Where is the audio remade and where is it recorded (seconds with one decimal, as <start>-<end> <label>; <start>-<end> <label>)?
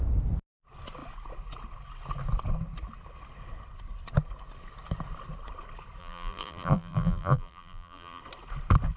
0.0-6.0 recorded; 6.0-8.2 remade; 8.2-9.0 recorded